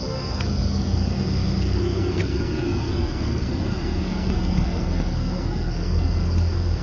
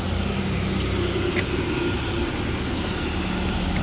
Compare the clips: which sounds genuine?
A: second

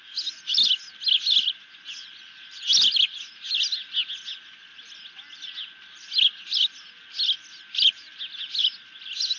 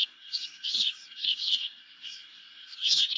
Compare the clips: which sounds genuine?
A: first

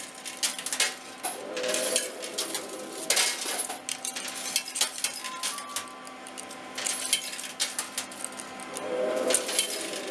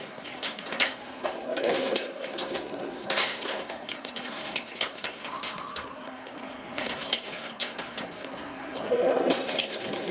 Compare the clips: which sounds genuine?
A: first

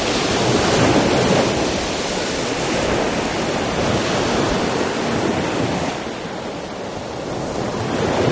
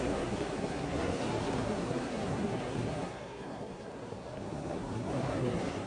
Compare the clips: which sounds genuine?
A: first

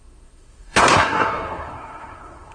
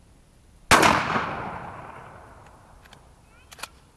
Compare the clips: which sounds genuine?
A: second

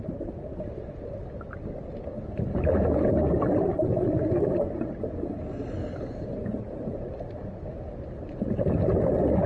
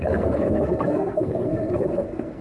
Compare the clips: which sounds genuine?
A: first